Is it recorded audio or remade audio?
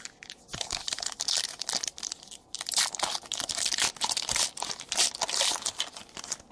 recorded